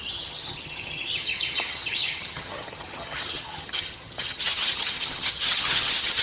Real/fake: fake